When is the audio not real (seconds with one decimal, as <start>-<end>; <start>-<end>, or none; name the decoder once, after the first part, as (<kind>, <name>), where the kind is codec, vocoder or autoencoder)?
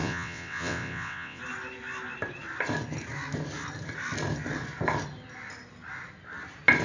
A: 0.0-1.4 (vocoder, WaveNeXt)